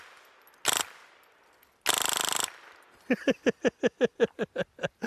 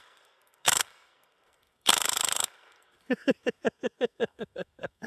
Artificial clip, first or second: second